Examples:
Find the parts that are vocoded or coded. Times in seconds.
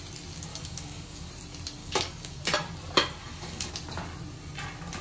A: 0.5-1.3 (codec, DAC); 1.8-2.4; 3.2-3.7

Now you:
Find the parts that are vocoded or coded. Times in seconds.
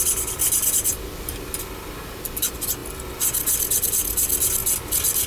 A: none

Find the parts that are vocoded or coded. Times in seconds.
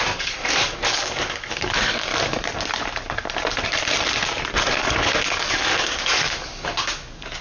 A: 0.0-2.1 (codec, DAC); 4.7-7.4